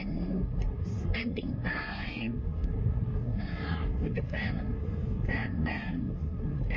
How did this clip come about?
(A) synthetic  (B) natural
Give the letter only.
A